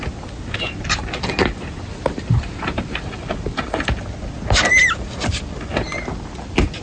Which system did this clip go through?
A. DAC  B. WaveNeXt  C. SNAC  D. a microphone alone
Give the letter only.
D